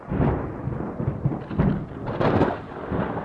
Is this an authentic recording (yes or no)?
yes